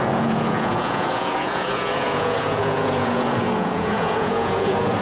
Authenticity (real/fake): fake